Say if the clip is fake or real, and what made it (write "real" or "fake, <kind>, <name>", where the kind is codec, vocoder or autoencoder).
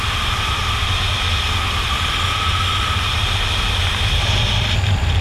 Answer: real